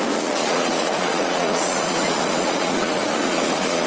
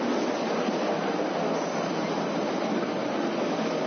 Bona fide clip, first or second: second